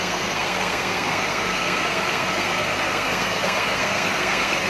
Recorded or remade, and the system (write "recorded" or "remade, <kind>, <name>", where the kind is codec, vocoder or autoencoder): remade, codec, SNAC